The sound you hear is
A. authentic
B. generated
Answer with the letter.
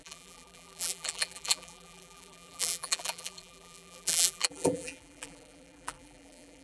B